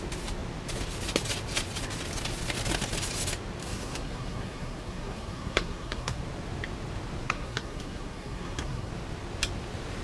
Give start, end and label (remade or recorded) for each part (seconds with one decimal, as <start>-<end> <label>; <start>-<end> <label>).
0.0-3.6 recorded; 3.6-6.2 remade; 6.2-7.2 recorded; 7.2-8.9 remade; 8.9-10.0 recorded